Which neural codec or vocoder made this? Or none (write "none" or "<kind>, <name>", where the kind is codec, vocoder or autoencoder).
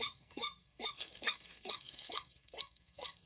codec, SNAC